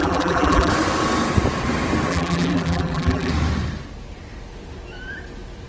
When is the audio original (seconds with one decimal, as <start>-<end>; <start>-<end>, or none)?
0.7-2.1; 3.3-5.7